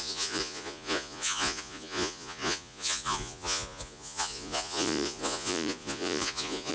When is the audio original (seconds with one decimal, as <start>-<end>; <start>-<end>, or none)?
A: none